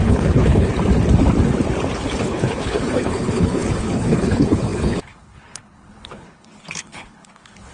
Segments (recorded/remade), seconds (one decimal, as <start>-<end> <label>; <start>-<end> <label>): 0.0-0.7 remade; 0.7-2.2 recorded; 2.2-7.7 remade